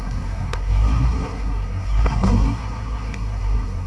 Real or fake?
fake